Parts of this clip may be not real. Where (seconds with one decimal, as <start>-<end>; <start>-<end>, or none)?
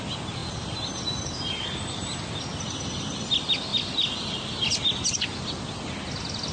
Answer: 3.7-4.4